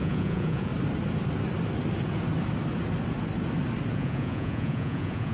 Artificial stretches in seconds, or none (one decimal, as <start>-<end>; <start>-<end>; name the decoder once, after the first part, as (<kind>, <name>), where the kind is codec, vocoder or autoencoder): 0.0-0.7 (vocoder, Vocos); 3.9-5.3